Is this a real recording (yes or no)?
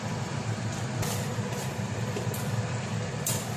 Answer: no